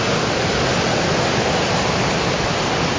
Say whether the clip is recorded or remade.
recorded